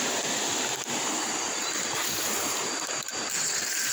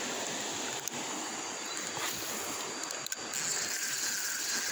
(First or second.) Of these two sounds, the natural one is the second